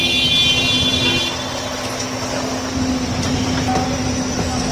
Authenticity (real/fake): real